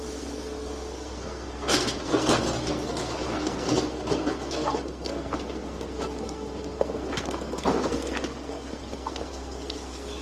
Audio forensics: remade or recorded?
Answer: remade